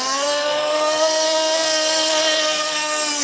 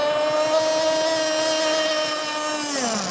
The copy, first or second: first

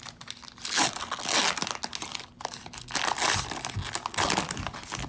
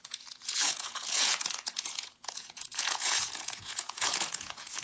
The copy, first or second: second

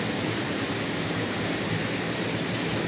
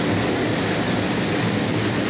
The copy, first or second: first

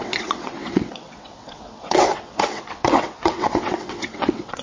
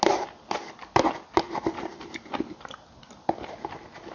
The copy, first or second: first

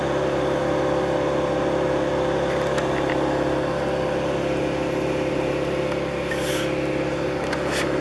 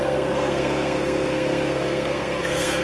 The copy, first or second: second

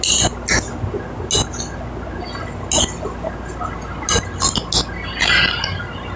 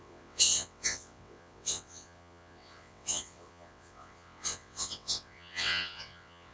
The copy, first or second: second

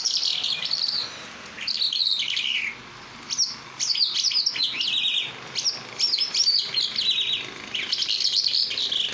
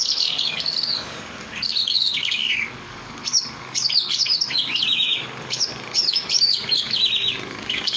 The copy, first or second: second